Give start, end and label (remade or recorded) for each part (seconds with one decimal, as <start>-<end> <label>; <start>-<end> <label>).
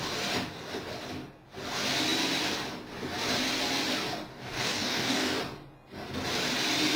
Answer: 0.0-4.3 recorded; 4.3-5.4 remade; 5.4-7.0 recorded